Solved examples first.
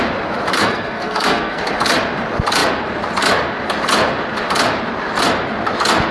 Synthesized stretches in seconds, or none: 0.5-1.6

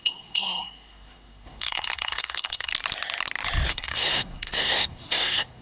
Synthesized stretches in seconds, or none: 0.0-2.7; 3.7-5.6

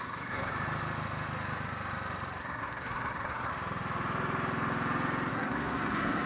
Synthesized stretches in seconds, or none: 0.0-0.5; 2.4-3.5; 5.3-6.3